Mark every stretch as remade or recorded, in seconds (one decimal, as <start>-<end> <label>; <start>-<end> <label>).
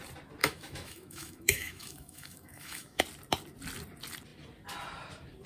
0.0-0.4 recorded; 0.4-3.0 remade; 3.0-5.5 recorded